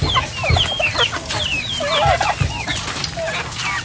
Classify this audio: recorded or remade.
recorded